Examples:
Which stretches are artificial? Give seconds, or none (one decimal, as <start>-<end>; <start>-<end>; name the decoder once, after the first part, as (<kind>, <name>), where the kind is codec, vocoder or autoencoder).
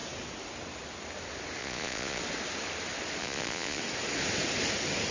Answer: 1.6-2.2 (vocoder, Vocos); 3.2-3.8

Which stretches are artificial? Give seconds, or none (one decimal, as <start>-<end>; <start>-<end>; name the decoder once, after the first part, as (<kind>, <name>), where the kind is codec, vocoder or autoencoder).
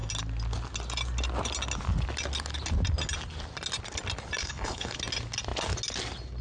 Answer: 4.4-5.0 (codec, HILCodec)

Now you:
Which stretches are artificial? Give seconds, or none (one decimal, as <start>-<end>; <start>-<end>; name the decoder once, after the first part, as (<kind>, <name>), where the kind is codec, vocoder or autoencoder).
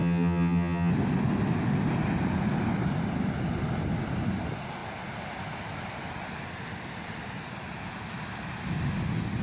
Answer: 0.0-0.9 (vocoder, HiFi-GAN)